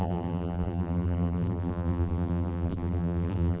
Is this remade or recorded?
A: remade